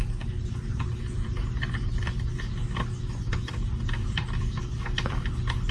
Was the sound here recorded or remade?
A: recorded